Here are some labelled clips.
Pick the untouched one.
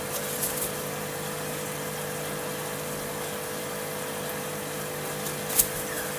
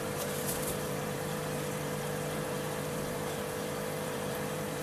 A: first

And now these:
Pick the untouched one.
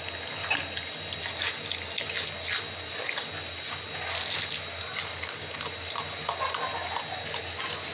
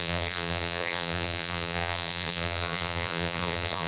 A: first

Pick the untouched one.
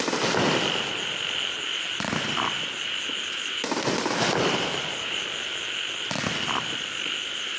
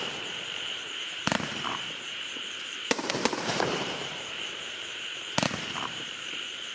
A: first